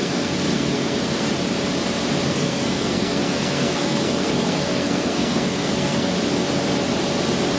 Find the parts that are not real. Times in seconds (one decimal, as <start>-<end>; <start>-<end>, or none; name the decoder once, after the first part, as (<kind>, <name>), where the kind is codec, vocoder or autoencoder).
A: 0.0-1.3 (codec, SNAC); 2.3-6.1